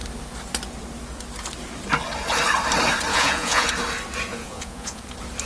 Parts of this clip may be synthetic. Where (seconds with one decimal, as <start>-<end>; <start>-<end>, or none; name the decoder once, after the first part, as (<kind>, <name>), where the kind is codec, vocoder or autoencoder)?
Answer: 3.1-3.7 (vocoder, Vocos); 4.3-5.0